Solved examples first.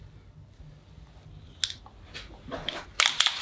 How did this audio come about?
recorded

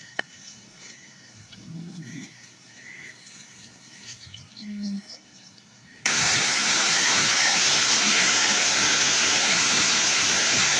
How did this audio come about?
remade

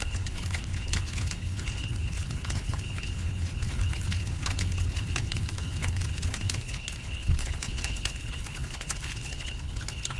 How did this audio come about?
remade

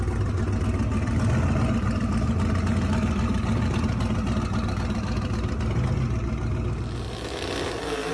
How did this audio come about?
recorded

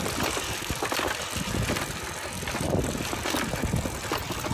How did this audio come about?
recorded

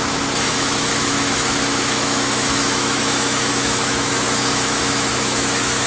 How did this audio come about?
remade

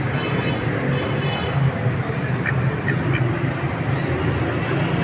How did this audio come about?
recorded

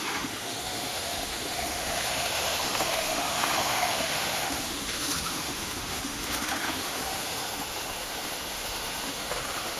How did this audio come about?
remade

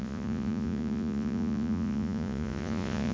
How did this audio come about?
remade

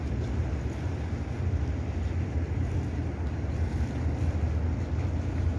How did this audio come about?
recorded